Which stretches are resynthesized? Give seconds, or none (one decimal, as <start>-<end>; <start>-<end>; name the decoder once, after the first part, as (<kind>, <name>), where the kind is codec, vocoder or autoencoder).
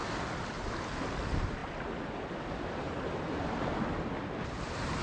none